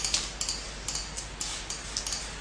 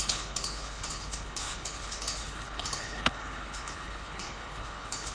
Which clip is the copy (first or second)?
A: second